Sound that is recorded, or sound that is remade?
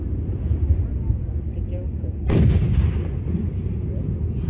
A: recorded